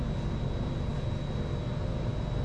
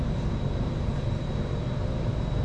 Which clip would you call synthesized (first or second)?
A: second